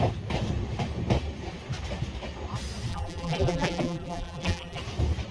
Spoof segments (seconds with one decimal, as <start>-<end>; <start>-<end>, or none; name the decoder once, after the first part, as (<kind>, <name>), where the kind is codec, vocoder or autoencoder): 2.9-4.8 (vocoder, BigVGAN v2)